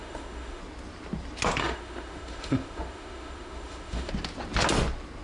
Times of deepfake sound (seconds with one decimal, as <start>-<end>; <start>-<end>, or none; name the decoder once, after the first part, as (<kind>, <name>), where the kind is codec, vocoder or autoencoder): 0.0-0.6 (autoencoder, DAC-VAE); 1.6-4.1